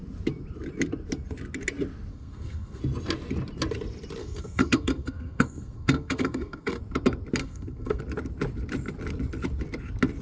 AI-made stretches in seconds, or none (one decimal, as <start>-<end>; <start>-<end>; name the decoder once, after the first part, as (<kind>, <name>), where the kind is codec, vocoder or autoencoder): 2.1-2.8 (codec, SNAC); 4.2-6.8; 7.4-8.0